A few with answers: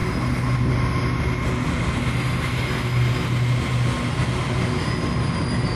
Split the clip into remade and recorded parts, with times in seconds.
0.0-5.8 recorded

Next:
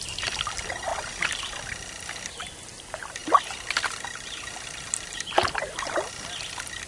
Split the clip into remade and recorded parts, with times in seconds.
0.0-6.9 recorded

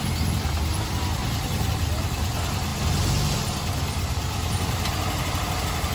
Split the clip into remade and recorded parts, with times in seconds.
0.0-1.2 recorded; 1.2-1.7 remade; 1.7-5.9 recorded

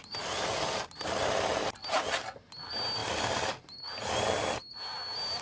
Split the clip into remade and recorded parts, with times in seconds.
0.0-5.4 recorded

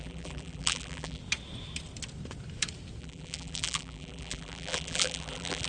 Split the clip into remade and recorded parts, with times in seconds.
0.0-1.2 remade; 1.2-3.0 recorded; 3.0-5.7 remade

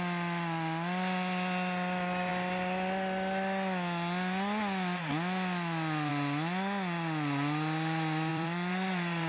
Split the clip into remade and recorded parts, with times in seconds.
0.0-8.3 recorded; 8.3-9.3 remade